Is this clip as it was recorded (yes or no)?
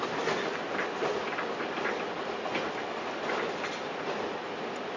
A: yes